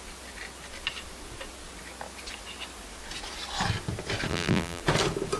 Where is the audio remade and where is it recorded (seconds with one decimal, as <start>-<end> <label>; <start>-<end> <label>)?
0.0-4.3 recorded; 4.3-4.8 remade; 4.8-5.4 recorded